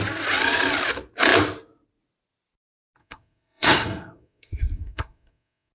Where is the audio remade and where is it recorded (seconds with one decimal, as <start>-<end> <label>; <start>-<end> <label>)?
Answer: 0.0-3.0 recorded; 3.0-5.7 remade